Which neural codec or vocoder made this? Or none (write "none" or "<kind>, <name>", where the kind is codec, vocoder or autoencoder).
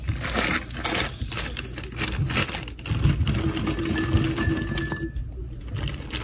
none